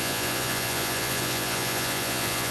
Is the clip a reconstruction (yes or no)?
yes